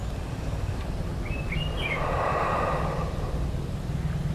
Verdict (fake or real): fake